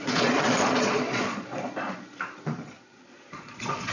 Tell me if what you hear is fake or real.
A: fake